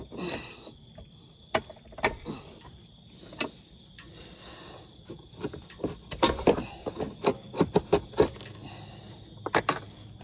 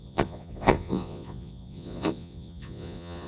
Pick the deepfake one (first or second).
second